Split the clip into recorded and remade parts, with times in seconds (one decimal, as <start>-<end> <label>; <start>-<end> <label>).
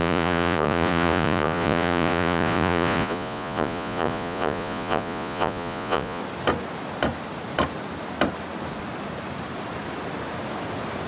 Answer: 0.0-6.2 remade; 6.2-11.1 recorded